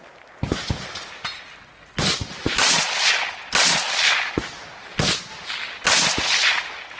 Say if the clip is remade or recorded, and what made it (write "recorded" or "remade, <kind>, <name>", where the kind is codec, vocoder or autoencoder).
recorded